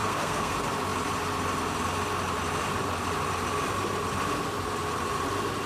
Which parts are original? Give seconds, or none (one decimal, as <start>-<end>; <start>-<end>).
0.5-5.7